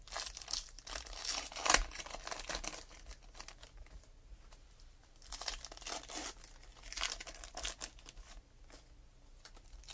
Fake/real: real